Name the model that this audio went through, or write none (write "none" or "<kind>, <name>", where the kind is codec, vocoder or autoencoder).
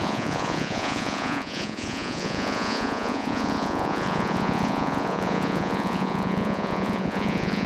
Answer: vocoder, Vocos